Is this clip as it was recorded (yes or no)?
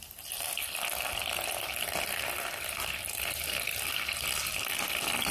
yes